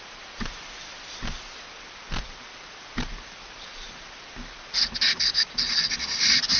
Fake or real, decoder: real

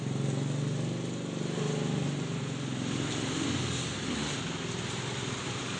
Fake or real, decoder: real